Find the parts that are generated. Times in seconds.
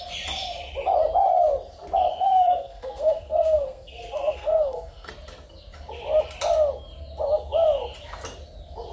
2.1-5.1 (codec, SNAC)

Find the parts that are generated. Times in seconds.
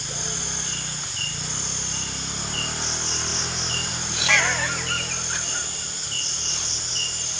3.3-4.4 (vocoder, BigVGAN v2)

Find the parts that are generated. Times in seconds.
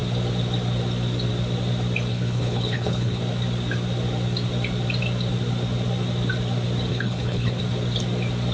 2.1-3.2 (codec, HILCodec); 6.9-7.6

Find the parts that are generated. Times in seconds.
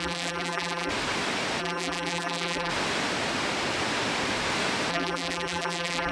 0.0-0.9 (vocoder, BigVGAN v2); 1.6-2.7; 4.9-6.1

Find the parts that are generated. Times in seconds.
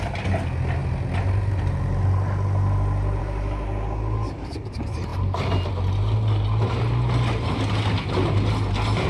none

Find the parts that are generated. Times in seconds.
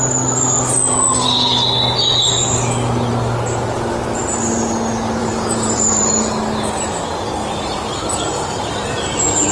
5.2-6.1 (vocoder, BigVGAN v2); 7.4-9.5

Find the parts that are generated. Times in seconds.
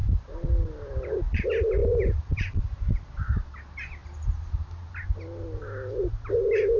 1.8-2.6 (vocoder, BigVGAN v2)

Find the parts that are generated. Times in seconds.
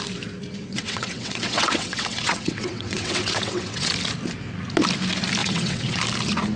0.6-3.9 (vocoder, WaveNeXt); 5.4-6.0